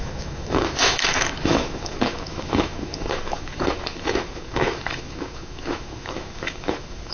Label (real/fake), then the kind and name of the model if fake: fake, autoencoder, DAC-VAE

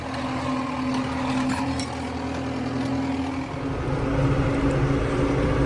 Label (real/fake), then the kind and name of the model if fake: real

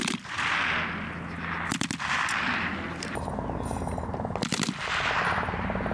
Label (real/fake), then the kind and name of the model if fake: real